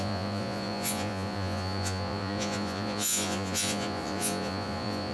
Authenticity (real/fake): fake